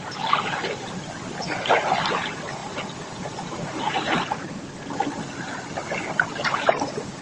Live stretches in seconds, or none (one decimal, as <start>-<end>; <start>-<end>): 0.0-7.2